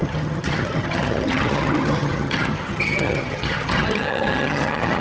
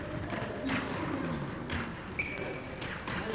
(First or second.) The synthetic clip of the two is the first